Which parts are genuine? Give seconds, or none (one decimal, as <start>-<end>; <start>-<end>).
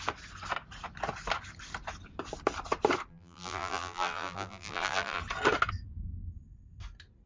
0.0-3.1; 5.2-7.3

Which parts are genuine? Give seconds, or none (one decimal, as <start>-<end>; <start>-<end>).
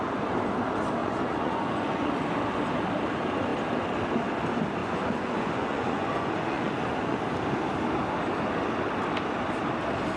0.0-1.0; 2.1-4.8; 7.2-10.2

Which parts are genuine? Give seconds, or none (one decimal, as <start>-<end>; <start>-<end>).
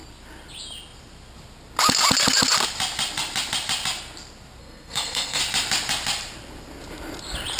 0.0-4.6; 5.4-7.6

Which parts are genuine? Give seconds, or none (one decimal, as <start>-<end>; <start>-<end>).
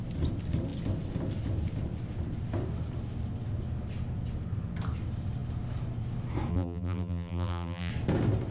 0.0-6.5; 7.9-8.5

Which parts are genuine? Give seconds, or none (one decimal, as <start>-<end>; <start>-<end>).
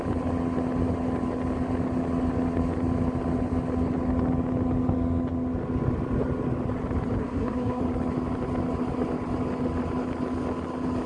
0.0-7.2; 7.8-11.1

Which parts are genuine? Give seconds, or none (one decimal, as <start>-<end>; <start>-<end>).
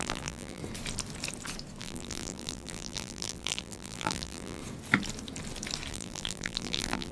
0.6-1.8; 4.6-5.9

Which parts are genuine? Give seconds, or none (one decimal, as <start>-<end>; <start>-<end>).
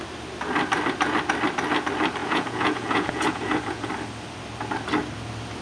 0.0-2.2; 3.9-5.6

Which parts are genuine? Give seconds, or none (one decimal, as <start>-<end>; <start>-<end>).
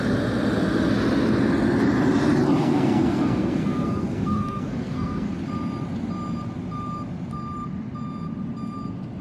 0.0-2.6; 5.3-9.2